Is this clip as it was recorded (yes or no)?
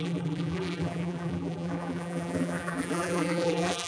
no